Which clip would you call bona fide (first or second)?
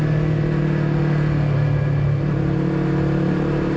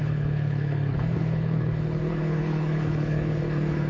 first